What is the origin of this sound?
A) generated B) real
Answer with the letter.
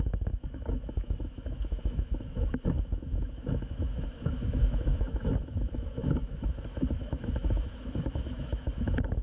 A